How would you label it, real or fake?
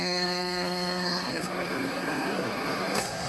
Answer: fake